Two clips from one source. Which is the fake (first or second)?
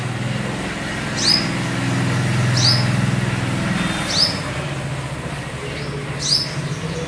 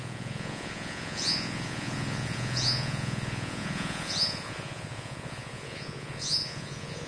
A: second